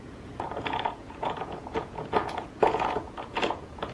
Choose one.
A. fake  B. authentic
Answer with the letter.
A